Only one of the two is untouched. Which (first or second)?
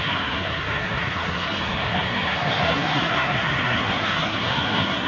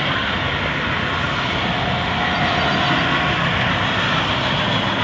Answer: second